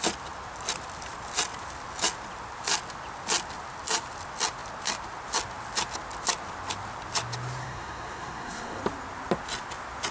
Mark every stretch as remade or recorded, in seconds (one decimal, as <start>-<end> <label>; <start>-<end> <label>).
0.0-7.6 recorded; 7.6-8.8 remade; 8.8-10.1 recorded